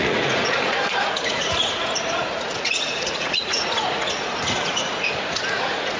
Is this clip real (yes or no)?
no